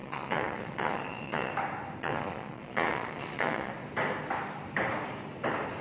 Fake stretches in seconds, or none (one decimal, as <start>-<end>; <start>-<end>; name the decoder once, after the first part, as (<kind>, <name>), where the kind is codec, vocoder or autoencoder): 0.0-1.5 (vocoder, Vocos); 2.0-3.7